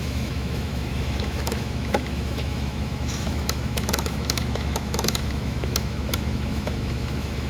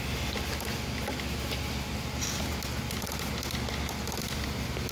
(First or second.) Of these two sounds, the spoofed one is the first